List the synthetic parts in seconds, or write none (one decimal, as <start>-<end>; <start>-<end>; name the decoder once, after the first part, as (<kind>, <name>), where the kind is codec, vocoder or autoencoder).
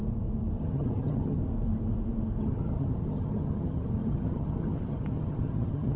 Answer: 0.6-1.4 (vocoder, HiFi-GAN); 2.4-6.0